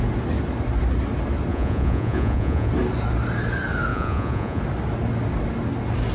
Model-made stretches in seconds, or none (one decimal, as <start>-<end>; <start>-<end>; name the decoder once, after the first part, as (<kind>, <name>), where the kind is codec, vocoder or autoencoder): 1.5-2.7 (vocoder, Vocos); 3.9-4.6